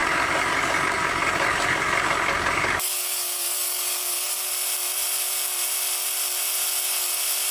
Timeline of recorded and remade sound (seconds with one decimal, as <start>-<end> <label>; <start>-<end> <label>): 0.0-4.5 remade; 4.5-7.5 recorded